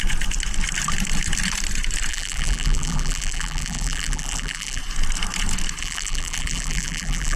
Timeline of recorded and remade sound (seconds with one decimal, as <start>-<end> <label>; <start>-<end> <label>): 0.0-2.1 recorded; 2.1-4.8 remade; 4.8-5.8 recorded; 5.8-7.4 remade